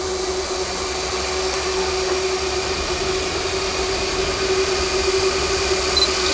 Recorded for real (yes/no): yes